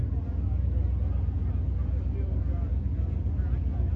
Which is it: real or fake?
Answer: real